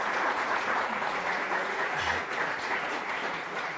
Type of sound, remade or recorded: remade